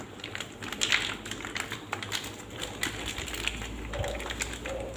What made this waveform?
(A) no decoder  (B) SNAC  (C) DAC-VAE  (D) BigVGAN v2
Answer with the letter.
A